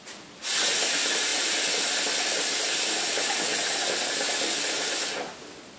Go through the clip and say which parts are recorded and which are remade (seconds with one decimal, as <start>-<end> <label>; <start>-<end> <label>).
0.0-5.8 recorded